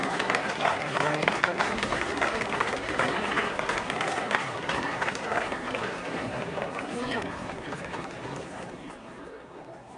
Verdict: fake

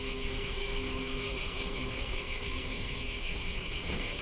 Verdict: fake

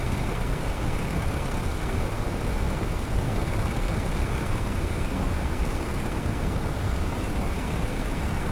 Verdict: fake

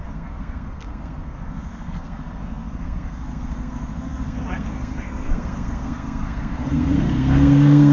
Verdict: fake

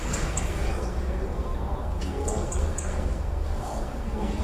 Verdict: fake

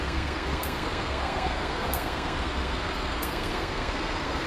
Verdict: fake